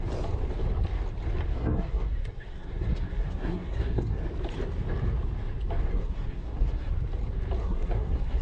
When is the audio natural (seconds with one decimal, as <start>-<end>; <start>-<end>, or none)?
0.0-1.5; 4.2-5.9; 6.9-7.6

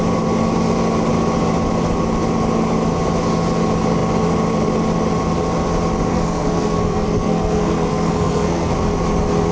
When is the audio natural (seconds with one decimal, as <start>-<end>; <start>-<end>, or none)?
0.0-6.1; 8.7-9.5

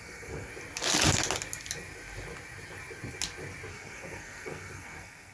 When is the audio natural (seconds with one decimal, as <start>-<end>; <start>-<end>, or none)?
0.5-3.7